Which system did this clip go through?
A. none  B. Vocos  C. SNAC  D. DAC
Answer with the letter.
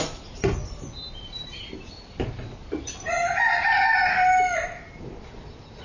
A